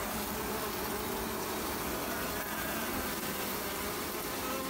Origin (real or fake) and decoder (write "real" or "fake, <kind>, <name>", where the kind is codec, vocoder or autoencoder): real